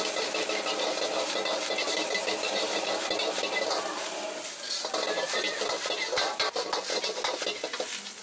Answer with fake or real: real